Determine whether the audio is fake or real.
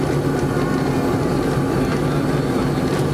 real